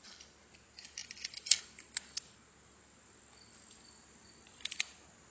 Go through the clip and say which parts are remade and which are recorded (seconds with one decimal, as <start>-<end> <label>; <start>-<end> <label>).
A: 0.0-5.3 recorded